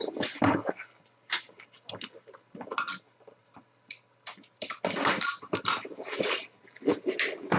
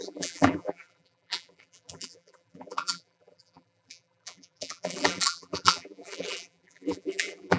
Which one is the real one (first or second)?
first